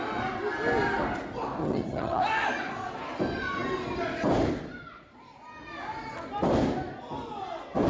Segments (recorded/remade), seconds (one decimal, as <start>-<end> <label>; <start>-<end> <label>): 0.0-1.6 recorded; 1.6-2.2 remade; 2.2-7.9 recorded